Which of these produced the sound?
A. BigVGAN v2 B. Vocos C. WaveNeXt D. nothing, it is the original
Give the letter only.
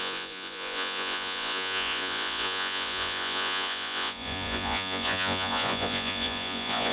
B